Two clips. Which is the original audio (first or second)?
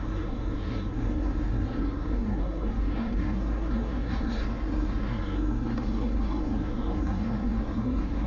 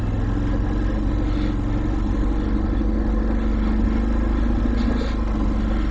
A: second